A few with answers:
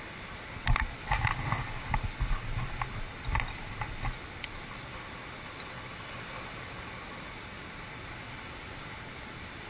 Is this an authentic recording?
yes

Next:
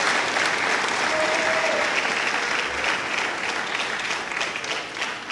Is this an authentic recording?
yes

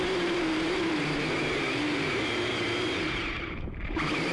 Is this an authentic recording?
no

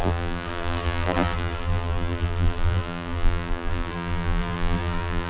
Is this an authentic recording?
no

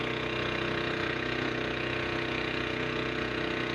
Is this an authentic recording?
no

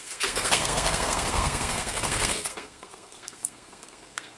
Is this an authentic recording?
no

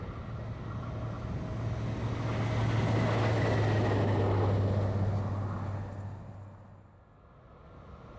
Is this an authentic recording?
yes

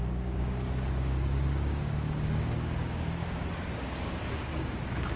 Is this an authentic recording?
no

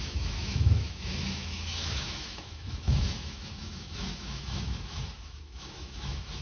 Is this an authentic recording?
no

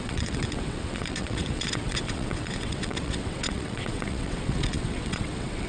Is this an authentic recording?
no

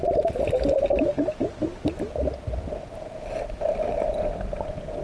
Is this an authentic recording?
yes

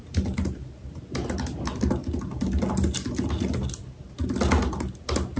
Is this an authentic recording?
yes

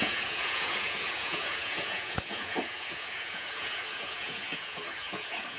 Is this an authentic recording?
no